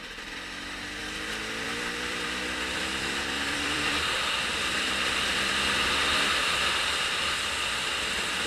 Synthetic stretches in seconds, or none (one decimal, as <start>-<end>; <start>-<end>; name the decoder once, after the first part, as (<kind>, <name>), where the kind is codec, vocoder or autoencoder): 1.0-5.5 (vocoder, BigVGAN v2); 6.0-6.7